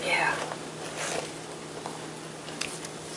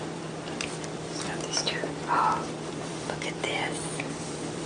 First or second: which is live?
first